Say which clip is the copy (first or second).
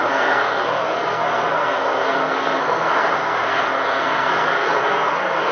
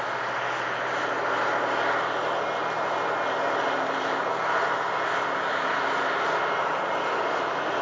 first